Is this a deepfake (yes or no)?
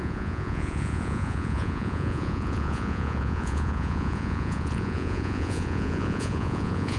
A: yes